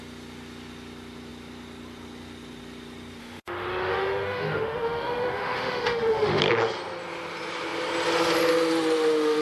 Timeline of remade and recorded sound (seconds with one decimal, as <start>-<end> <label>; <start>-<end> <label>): 0.0-3.2 recorded; 3.2-6.4 remade; 6.4-9.4 recorded